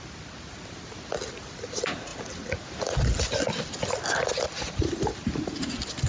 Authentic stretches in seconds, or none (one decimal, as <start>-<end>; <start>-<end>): 0.0-6.1